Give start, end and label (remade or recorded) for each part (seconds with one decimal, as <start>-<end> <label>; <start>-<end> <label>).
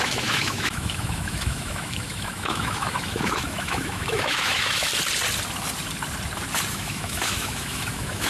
0.0-4.9 remade; 4.9-6.7 recorded; 6.7-8.3 remade